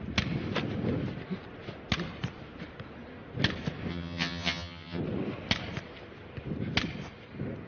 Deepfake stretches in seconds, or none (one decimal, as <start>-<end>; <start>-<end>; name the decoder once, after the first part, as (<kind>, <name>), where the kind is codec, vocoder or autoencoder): 3.9-5.0 (vocoder, HiFi-GAN)